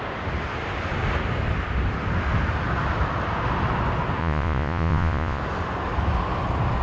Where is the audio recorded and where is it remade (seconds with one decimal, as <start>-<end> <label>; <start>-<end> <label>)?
0.0-4.2 recorded; 4.2-5.4 remade; 5.4-6.8 recorded